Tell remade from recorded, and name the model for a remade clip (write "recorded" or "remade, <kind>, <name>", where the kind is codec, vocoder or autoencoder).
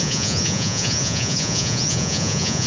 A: remade, vocoder, Vocos